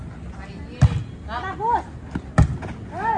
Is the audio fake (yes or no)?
no